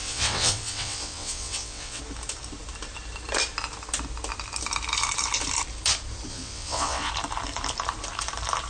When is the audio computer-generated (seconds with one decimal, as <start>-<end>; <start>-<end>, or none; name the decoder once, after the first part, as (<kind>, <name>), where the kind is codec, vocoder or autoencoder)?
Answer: 0.0-2.0 (vocoder, WaveNeXt); 6.3-7.1